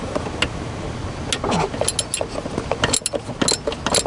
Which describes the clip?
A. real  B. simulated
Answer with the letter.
A